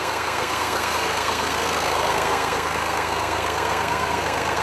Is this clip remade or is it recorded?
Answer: remade